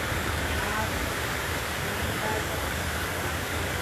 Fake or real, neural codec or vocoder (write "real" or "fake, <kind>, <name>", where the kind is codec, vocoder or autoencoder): fake, codec, DAC